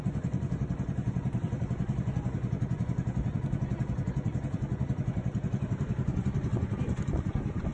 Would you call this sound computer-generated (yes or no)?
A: yes